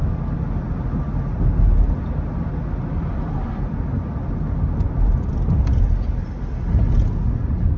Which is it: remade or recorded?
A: recorded